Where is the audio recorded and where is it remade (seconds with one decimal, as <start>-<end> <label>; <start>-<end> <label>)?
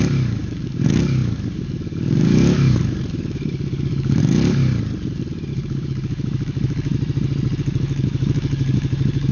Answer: 0.0-4.7 remade; 4.7-5.5 recorded; 5.5-6.9 remade; 6.9-7.6 recorded; 7.6-9.3 remade